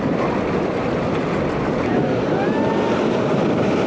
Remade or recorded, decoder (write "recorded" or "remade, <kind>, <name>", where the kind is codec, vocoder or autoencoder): recorded